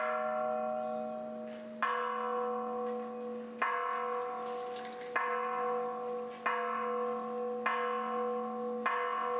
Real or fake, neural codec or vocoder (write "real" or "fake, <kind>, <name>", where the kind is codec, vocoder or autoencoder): real